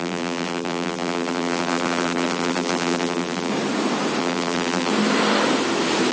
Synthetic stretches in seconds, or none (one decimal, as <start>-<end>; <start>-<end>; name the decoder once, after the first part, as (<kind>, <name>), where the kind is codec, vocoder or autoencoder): 0.0-3.5 (vocoder, BigVGAN v2); 4.2-4.9